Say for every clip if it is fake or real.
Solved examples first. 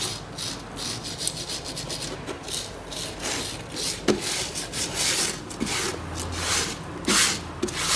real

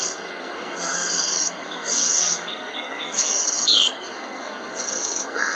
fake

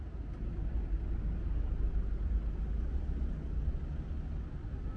real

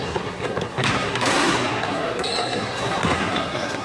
fake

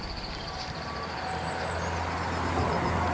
real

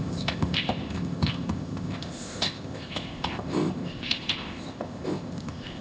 fake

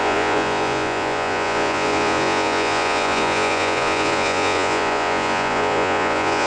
fake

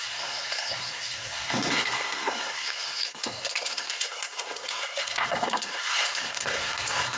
fake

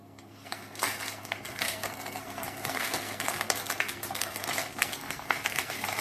fake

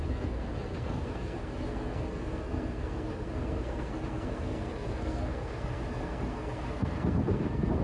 fake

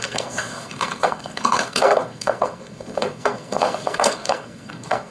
fake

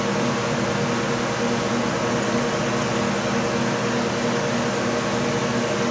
real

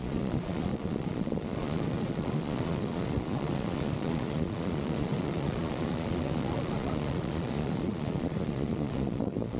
fake